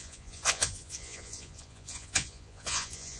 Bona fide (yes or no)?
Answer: no